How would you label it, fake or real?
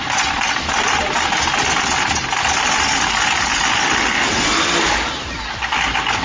real